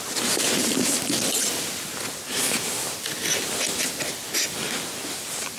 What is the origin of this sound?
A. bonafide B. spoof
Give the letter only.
A